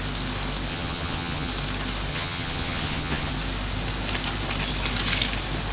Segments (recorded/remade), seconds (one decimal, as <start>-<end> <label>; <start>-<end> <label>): 0.0-0.7 recorded; 0.7-1.5 remade; 1.5-2.1 recorded; 2.1-3.3 remade; 3.3-5.7 recorded